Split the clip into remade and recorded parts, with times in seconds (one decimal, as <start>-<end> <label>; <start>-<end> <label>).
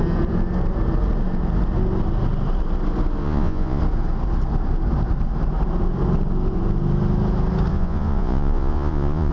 0.0-3.2 recorded; 3.2-3.8 remade; 3.8-7.7 recorded; 7.7-9.3 remade